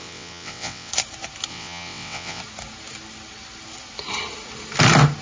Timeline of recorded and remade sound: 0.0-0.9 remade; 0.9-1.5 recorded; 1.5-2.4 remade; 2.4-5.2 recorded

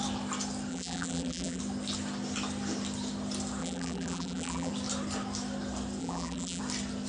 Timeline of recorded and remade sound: 0.0-0.7 recorded; 0.7-1.6 remade; 1.6-3.6 recorded; 3.6-4.7 remade; 4.7-6.0 recorded; 6.0-6.6 remade; 6.6-7.1 recorded

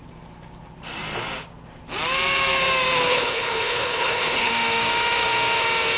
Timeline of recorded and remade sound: 0.0-3.1 recorded; 3.1-4.5 remade; 4.5-6.0 recorded